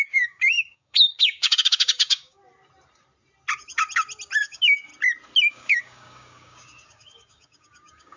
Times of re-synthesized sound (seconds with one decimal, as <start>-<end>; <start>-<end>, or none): 0.0-2.4; 4.4-4.9; 5.5-8.2